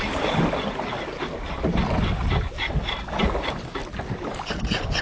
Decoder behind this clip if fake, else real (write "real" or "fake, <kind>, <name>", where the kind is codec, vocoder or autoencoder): real